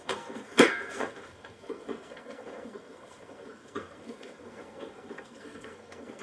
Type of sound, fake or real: fake